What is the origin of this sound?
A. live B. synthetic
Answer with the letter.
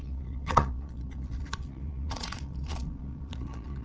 B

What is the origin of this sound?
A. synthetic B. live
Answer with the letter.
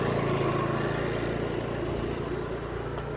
B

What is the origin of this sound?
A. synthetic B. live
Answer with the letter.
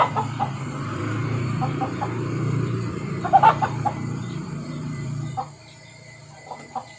A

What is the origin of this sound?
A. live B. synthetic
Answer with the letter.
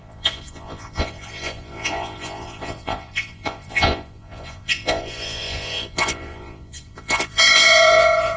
B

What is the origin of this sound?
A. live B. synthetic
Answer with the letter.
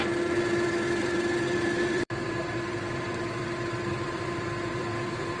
B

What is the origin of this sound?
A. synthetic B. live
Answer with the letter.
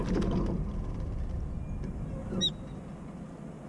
B